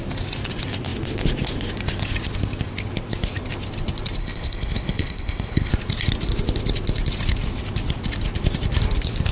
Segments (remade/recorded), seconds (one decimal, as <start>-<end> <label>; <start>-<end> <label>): 0.0-4.2 recorded; 4.2-5.7 remade; 5.7-9.3 recorded